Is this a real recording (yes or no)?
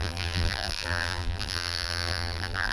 no